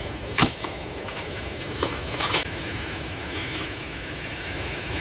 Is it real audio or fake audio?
fake